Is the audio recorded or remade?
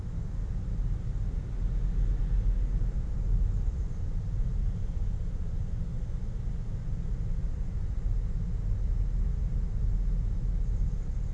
recorded